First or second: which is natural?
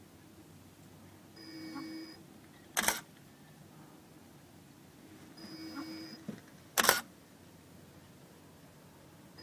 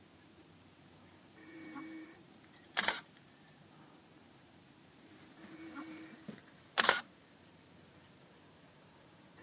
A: first